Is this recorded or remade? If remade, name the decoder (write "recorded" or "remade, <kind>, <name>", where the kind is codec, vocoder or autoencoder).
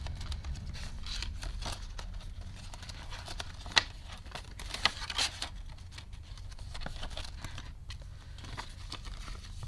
remade, vocoder, BigVGAN v2